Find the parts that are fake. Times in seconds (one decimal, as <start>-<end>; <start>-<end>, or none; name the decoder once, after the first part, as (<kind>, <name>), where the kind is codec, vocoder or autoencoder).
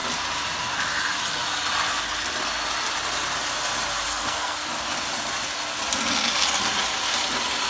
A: 4.1-4.7 (codec, SNAC)